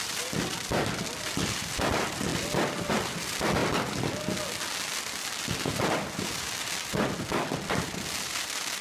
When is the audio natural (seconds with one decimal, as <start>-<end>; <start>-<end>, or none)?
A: 0.0-8.8